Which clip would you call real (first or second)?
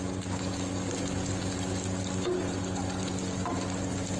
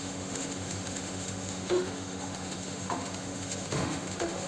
first